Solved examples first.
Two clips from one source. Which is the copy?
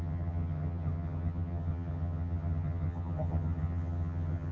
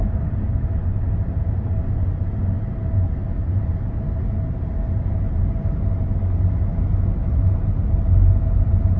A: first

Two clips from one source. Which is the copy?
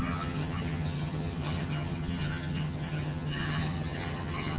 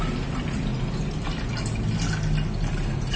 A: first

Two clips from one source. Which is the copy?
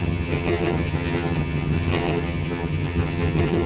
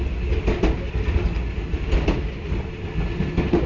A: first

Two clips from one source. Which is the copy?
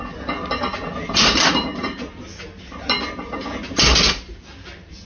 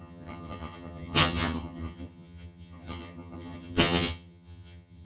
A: second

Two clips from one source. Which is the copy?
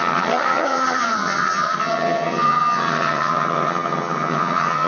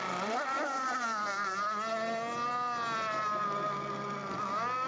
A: first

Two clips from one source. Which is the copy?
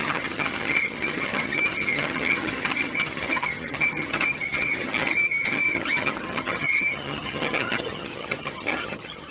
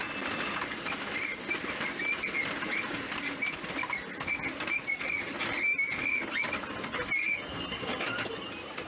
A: first